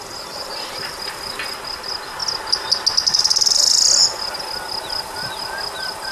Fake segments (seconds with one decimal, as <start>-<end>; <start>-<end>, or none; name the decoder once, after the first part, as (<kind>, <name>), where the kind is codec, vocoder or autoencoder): none